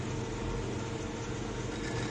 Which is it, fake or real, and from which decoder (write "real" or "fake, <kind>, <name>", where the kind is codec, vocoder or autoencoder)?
real